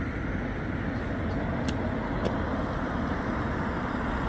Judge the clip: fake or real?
real